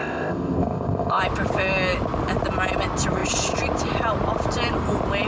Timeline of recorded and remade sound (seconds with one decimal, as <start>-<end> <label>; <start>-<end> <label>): 0.0-1.2 remade; 1.2-5.3 recorded